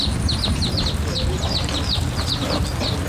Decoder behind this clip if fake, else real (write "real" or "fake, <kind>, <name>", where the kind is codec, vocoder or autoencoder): real